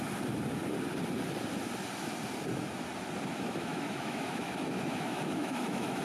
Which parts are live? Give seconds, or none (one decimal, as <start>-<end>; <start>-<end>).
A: 0.0-3.3